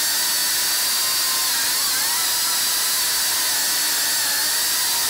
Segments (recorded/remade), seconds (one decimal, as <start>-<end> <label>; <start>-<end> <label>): 0.0-4.4 recorded; 4.4-5.1 remade